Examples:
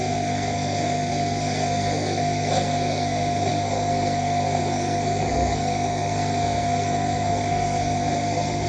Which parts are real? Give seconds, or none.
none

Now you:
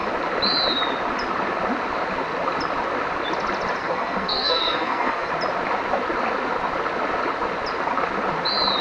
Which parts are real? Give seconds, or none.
0.0-3.8; 5.3-8.8

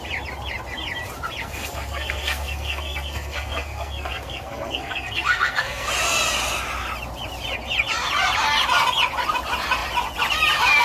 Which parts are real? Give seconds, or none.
0.0-1.4; 5.9-10.8

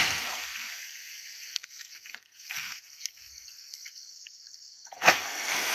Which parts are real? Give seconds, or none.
none

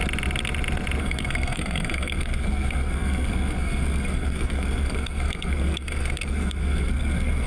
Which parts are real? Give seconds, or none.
0.0-1.0

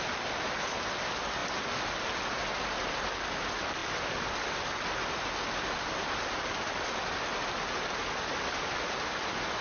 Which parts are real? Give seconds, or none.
0.0-9.6

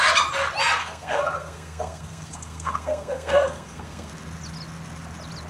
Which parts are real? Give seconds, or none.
0.0-0.8; 4.1-5.5